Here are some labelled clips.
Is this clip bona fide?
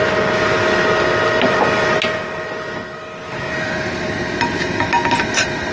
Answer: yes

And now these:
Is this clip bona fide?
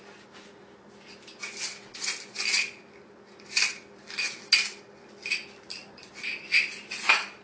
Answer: yes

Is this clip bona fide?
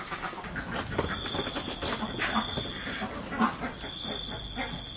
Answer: yes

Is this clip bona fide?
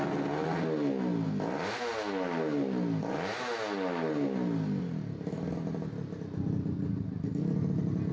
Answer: yes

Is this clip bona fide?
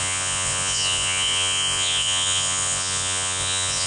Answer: no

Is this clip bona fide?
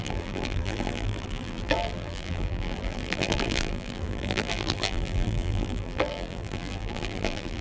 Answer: no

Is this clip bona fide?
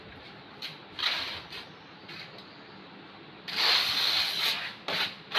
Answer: yes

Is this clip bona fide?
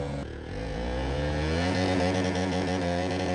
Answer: no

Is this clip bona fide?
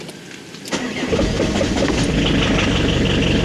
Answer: yes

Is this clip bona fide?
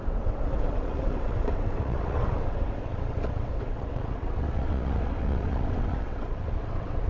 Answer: no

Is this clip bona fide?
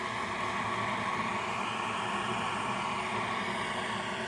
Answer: yes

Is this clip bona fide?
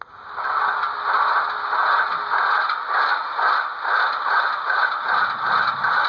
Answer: yes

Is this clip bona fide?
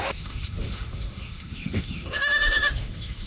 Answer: no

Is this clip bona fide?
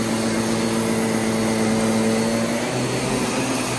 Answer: yes